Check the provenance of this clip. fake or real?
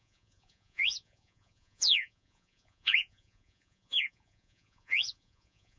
fake